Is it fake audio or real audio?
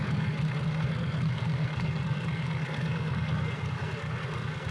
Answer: fake